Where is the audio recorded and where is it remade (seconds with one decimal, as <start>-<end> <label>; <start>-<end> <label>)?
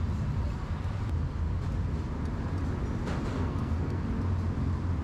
0.0-3.3 recorded; 3.3-4.0 remade; 4.0-5.0 recorded